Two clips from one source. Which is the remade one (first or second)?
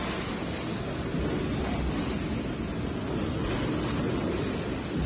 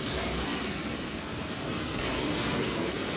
second